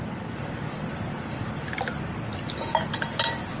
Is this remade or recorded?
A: recorded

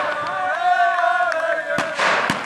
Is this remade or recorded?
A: remade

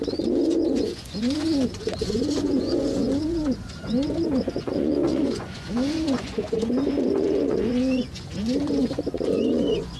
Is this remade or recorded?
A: remade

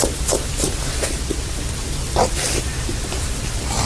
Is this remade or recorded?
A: recorded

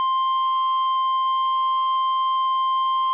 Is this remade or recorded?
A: recorded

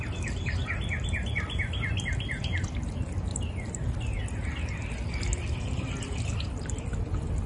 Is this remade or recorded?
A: recorded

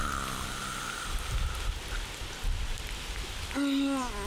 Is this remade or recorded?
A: recorded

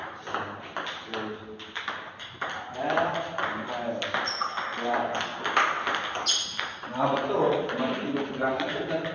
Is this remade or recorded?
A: recorded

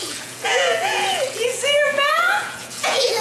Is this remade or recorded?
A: remade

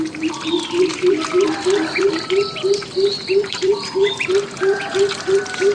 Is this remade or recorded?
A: remade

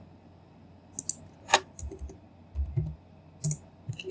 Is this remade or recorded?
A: recorded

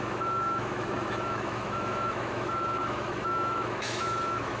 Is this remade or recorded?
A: remade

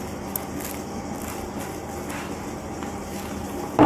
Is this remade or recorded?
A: recorded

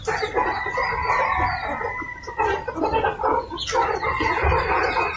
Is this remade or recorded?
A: recorded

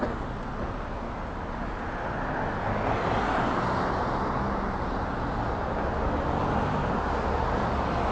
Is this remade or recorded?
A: recorded